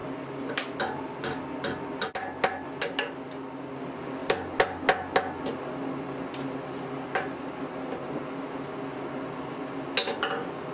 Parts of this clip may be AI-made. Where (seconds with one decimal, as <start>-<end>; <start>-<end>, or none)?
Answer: none